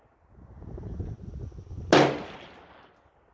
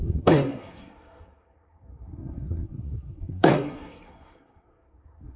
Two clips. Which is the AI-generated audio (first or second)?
second